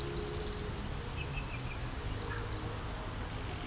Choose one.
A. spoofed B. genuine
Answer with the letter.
B